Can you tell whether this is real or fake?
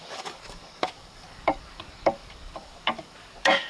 fake